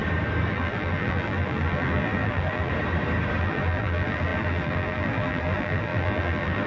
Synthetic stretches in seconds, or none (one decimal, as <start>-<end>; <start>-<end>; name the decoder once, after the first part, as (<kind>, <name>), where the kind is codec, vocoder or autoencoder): 0.5-2.7 (vocoder, BigVGAN v2); 3.4-6.7